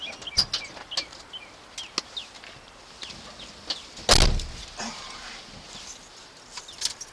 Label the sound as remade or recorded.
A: recorded